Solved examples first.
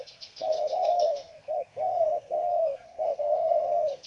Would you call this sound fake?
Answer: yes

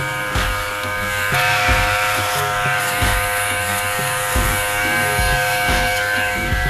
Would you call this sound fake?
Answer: yes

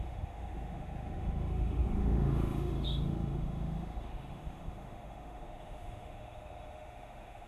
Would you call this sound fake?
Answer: yes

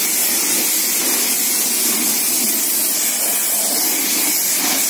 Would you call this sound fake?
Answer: no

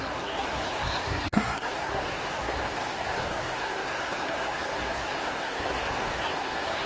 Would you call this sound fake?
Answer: yes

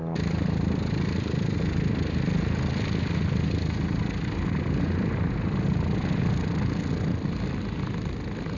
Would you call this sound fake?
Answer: no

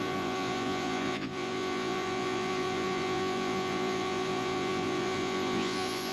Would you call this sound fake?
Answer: yes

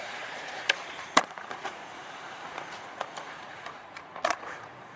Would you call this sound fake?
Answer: yes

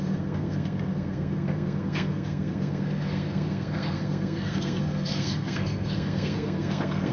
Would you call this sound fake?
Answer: yes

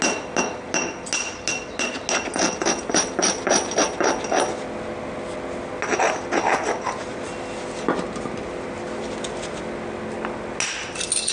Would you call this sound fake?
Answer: no